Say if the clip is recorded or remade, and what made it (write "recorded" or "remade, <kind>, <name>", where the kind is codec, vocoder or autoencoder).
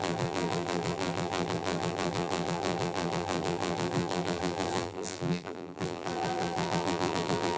remade, vocoder, BigVGAN v2